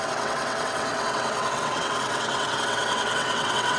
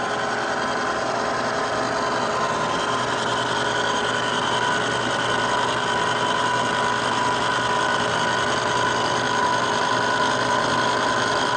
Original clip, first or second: second